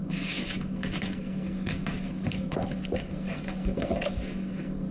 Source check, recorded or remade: remade